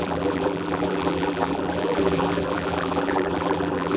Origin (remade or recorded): remade